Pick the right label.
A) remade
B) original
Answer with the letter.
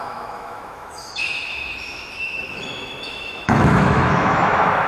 A